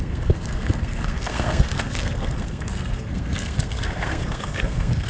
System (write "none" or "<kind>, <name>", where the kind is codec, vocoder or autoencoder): codec, SNAC